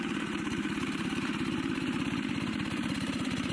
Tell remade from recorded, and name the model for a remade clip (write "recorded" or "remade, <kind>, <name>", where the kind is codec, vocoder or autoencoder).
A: remade, vocoder, BigVGAN v2